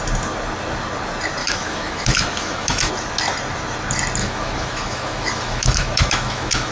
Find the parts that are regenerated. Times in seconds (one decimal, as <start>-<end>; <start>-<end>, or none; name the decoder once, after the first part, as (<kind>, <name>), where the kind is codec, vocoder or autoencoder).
1.4-2.9 (autoencoder, DAC-VAE); 4.2-6.7